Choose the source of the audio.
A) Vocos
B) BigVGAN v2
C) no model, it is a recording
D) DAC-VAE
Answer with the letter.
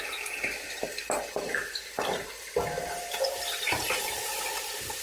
B